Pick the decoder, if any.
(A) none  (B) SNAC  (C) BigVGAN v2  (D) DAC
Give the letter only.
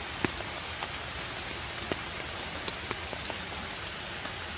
A